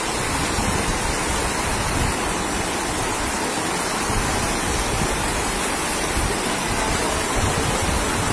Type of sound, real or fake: real